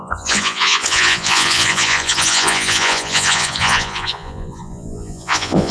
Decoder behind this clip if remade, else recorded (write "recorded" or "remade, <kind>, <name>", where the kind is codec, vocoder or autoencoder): remade, vocoder, Vocos